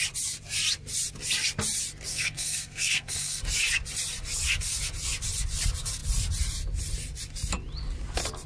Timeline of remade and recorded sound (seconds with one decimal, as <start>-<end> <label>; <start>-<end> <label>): 0.0-2.1 recorded; 2.1-3.4 remade; 3.4-8.5 recorded